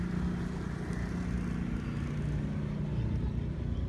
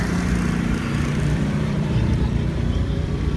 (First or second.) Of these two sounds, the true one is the first